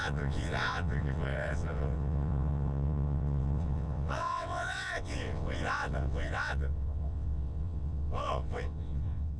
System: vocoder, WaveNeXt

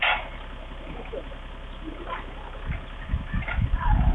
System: none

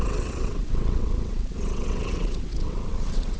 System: vocoder, WaveNeXt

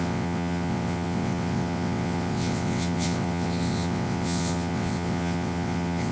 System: vocoder, WaveNeXt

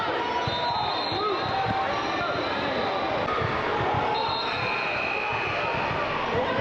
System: none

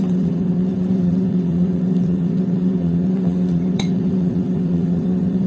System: vocoder, WaveNeXt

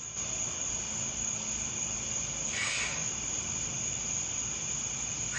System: none